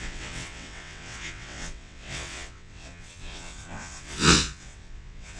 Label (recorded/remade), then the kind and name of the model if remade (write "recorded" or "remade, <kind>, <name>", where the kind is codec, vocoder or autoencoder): remade, vocoder, WaveNeXt